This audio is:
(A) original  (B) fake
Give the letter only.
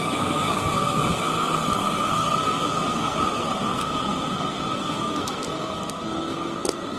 B